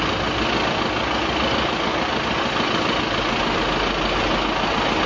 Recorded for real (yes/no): yes